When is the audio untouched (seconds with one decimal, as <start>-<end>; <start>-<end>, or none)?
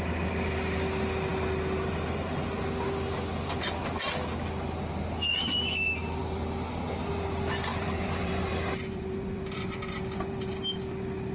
0.0-7.7; 10.0-11.3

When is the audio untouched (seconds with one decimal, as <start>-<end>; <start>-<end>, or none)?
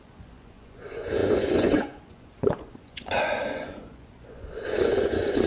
none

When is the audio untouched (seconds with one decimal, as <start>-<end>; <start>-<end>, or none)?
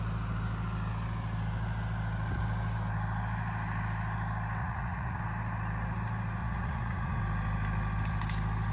0.0-4.6; 5.2-6.4; 7.2-8.7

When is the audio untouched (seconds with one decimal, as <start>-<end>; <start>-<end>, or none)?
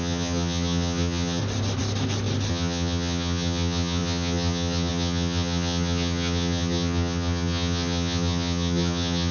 1.4-2.5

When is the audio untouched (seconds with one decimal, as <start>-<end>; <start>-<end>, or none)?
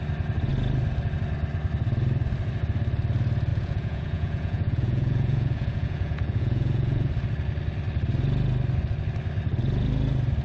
0.0-3.5; 7.1-10.4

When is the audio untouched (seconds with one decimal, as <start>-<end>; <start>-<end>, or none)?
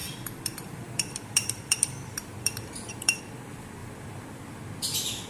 3.2-3.8; 4.6-5.3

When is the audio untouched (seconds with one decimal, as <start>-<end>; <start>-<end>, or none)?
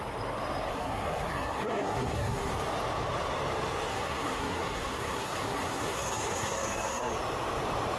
0.0-0.7; 2.5-3.9; 7.1-8.0